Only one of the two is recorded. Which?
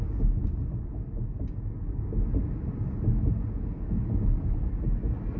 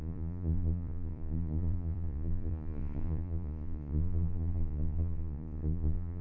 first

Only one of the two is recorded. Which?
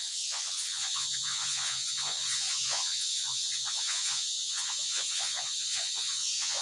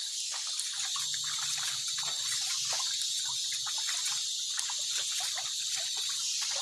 second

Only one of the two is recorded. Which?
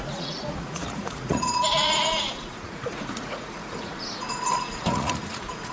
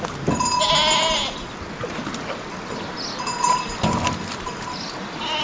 second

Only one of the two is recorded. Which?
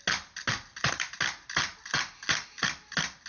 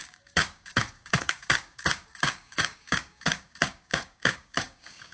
first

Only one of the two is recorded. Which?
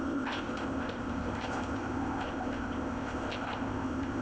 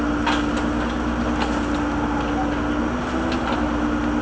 second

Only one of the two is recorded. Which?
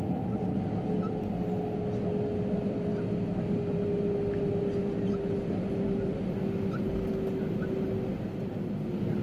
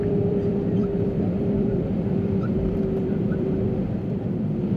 first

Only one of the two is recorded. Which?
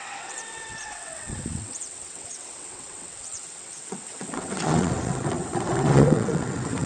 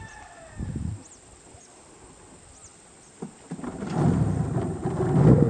second